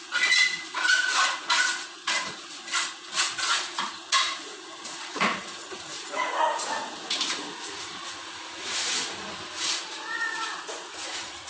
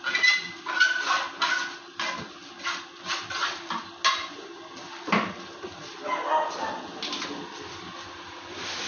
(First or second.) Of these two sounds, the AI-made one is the first